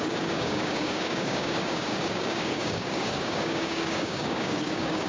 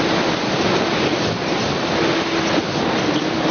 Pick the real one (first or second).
second